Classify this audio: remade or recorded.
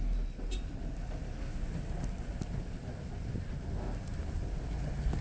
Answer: recorded